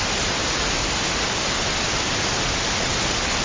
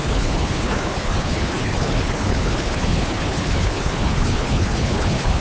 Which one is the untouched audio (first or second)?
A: first